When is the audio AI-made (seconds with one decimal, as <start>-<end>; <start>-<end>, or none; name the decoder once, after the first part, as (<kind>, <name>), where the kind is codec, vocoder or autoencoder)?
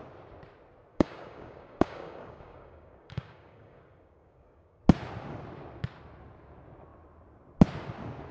0.9-4.8 (codec, DAC)